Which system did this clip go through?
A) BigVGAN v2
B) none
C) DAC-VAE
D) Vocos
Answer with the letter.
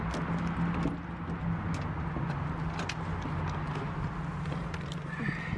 B